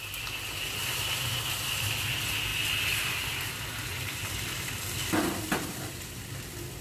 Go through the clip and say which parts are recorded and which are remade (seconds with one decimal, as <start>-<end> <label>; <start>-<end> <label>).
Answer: 0.0-3.9 recorded; 3.9-6.8 remade